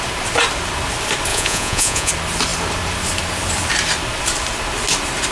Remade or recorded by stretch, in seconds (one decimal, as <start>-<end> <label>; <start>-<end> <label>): 0.0-1.3 recorded; 1.3-2.1 remade; 2.1-5.3 recorded

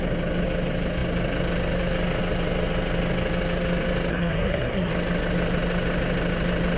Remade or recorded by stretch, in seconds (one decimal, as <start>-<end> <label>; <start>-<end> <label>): 0.0-4.1 recorded; 4.1-4.9 remade; 4.9-6.8 recorded